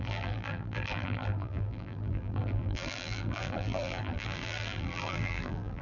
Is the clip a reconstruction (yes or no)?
yes